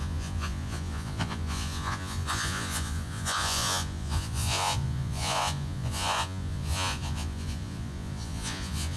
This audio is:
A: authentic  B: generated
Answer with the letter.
B